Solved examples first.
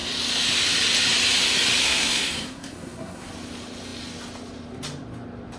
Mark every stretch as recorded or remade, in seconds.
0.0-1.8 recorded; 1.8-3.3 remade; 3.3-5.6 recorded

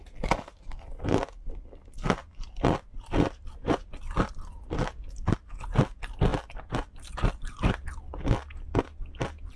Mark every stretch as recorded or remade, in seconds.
0.0-9.6 recorded

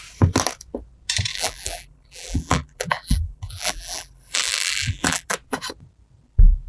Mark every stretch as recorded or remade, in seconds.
0.0-1.3 recorded; 1.3-5.3 remade; 5.3-6.7 recorded

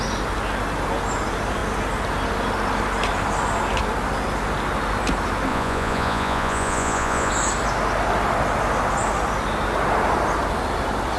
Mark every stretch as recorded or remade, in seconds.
0.0-5.5 recorded; 5.5-7.3 remade; 7.3-11.2 recorded

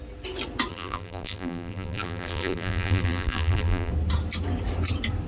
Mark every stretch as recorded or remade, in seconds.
0.0-0.7 recorded; 0.7-3.9 remade; 3.9-5.3 recorded